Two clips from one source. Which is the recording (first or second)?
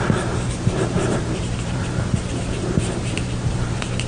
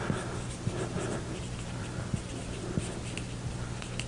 second